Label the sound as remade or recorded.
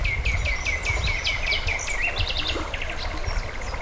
recorded